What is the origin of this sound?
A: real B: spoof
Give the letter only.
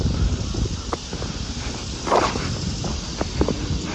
A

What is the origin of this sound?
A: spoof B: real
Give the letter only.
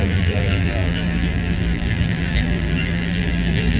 A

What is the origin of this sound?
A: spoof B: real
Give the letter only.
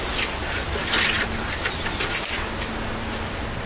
B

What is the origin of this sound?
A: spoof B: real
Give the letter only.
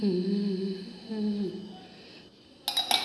B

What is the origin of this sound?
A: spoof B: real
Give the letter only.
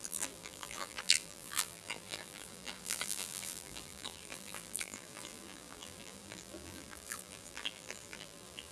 A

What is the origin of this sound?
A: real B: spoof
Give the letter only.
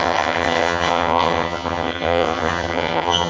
B